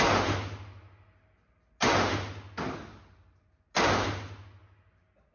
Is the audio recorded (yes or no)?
yes